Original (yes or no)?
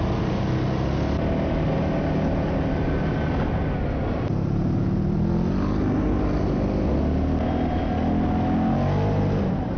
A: yes